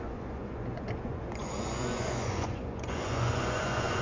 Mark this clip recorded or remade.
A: remade